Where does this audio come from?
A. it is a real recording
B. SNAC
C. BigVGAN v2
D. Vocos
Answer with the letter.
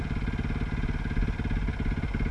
A